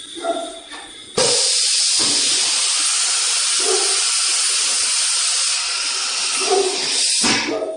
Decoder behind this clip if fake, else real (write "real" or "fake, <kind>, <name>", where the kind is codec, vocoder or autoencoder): real